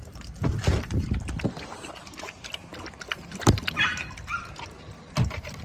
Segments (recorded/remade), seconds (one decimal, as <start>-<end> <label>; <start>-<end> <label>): 0.0-5.6 remade